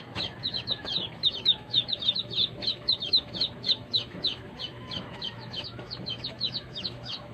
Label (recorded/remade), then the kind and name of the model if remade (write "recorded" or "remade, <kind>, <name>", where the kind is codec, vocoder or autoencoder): remade, autoencoder, DAC-VAE